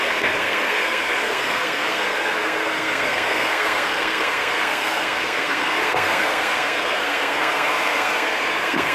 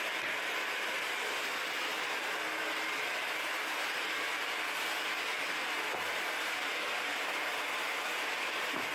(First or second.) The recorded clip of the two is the second